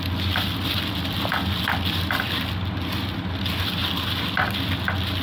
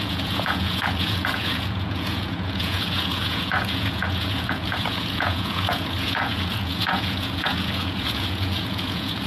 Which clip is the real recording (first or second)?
first